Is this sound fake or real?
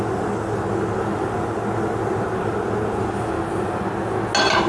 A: real